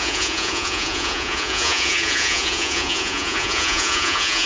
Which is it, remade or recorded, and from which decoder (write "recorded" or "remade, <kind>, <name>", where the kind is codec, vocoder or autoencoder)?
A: remade, vocoder, Vocos